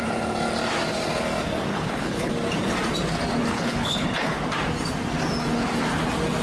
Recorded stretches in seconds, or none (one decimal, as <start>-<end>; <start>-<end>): 0.0-1.7; 2.3-3.5; 4.4-6.4